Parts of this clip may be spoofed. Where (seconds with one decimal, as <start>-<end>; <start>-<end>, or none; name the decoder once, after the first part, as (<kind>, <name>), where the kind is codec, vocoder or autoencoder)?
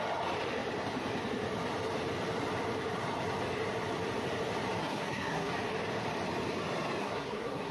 4.8-5.5 (codec, SNAC); 7.0-7.7